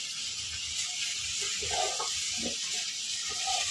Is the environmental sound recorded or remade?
recorded